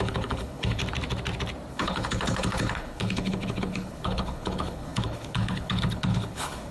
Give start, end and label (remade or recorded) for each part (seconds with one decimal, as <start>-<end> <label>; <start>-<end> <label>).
0.0-0.8 remade; 0.8-1.7 recorded; 1.7-6.7 remade